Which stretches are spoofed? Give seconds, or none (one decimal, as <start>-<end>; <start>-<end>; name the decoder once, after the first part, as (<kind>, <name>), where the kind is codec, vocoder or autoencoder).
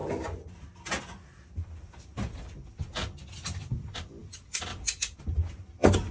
none